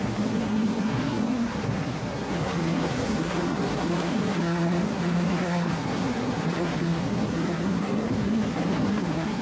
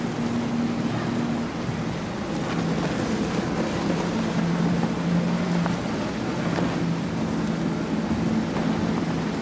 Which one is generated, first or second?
first